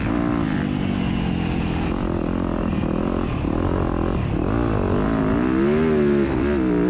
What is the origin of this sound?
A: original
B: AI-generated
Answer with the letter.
A